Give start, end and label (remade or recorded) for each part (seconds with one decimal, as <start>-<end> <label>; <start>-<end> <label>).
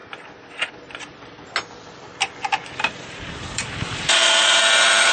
0.0-2.6 recorded; 2.6-5.1 remade